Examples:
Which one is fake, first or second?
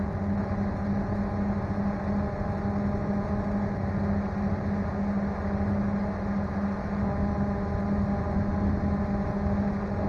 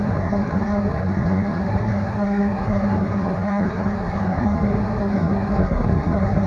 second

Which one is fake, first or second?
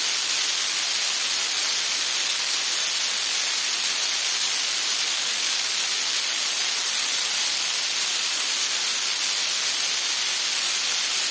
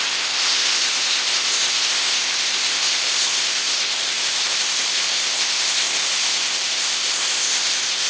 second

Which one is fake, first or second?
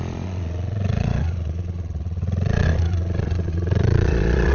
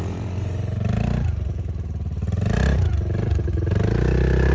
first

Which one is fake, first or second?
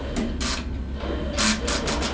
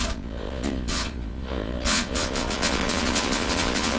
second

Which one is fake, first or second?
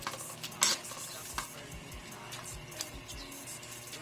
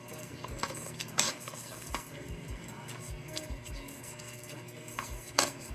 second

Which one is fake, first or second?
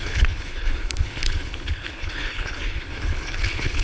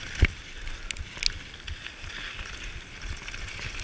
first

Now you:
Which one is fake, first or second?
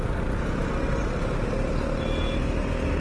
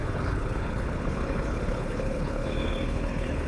second